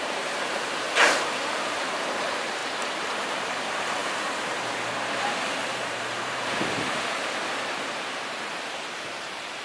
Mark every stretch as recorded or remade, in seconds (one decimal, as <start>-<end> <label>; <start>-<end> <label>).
0.0-9.6 remade